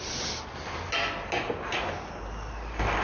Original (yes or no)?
yes